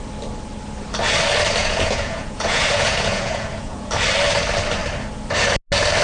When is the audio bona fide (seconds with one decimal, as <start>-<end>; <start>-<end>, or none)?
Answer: 0.0-1.6; 3.9-6.0